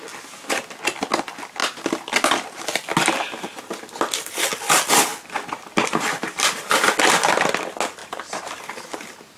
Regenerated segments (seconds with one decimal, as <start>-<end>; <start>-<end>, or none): 5.9-6.9; 8.0-8.5